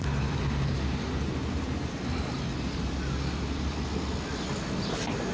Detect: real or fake real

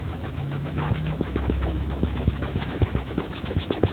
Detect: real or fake fake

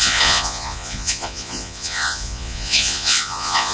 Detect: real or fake fake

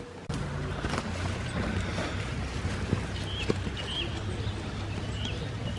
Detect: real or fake real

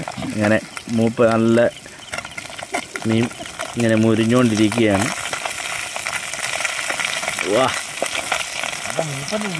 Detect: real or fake real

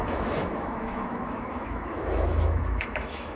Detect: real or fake fake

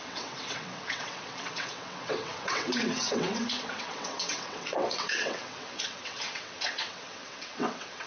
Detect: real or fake fake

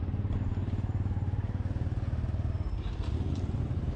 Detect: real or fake real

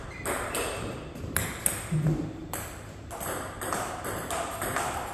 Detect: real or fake real